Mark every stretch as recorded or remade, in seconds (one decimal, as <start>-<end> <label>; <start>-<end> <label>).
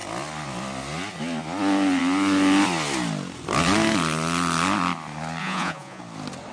0.0-5.4 recorded; 5.4-6.0 remade; 6.0-6.5 recorded